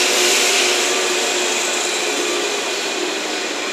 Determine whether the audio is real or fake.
real